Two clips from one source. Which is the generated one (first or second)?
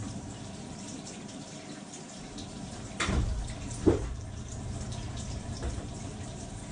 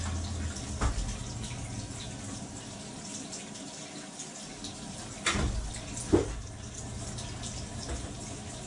first